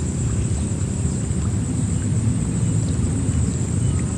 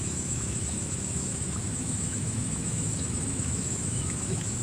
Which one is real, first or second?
first